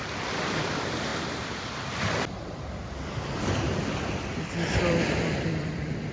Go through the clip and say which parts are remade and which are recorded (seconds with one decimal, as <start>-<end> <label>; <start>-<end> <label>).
0.0-1.1 remade; 1.1-4.8 recorded; 4.8-6.1 remade